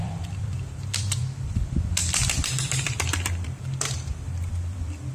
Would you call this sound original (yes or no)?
no